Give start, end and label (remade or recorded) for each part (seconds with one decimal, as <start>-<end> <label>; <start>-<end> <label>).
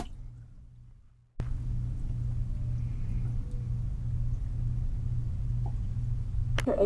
0.0-6.9 recorded